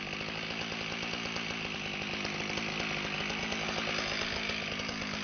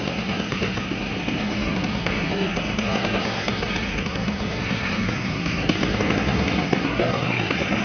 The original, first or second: first